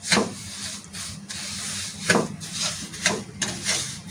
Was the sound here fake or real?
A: real